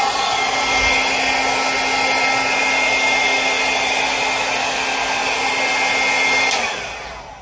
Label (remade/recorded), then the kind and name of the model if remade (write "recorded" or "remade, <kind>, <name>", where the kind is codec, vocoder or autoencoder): recorded